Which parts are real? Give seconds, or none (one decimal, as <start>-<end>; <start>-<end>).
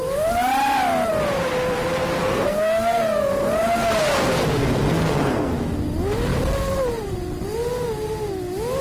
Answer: 0.0-2.2; 3.3-4.6; 5.5-8.8